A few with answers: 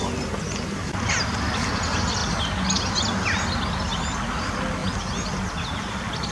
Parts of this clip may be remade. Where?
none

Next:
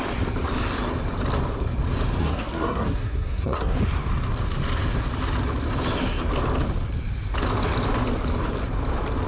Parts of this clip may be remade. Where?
2.2-3.8 (codec, SNAC)

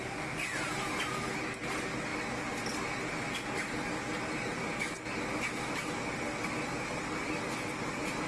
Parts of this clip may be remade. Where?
none